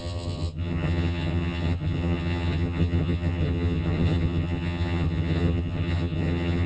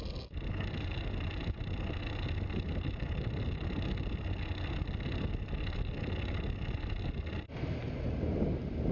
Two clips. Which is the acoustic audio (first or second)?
second